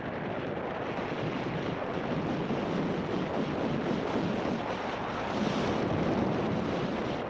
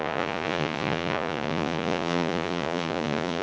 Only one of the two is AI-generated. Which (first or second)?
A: second